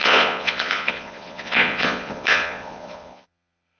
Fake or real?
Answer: fake